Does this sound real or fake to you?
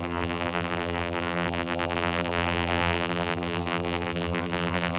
fake